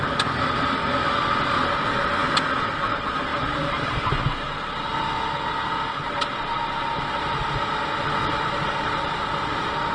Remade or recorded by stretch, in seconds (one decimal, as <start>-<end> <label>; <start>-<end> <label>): 0.0-9.9 recorded